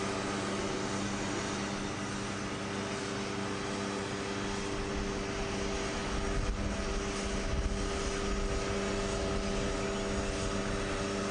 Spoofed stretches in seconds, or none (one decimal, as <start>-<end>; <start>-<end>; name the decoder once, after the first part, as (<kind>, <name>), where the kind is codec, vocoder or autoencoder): none